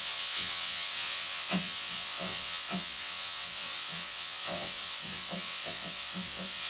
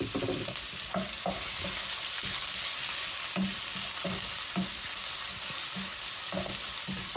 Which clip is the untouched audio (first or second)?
second